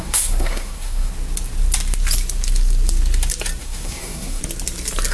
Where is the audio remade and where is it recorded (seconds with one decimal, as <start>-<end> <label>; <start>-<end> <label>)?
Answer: 0.0-1.1 remade; 1.1-3.6 recorded; 3.6-4.4 remade; 4.4-5.1 recorded